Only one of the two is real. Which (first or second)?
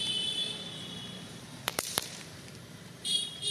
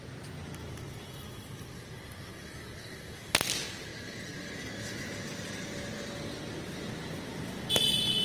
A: second